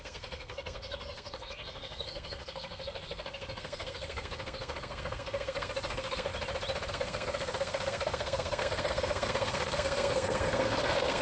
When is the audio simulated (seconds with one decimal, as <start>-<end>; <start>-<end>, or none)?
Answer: 0.0-6.3; 6.9-11.2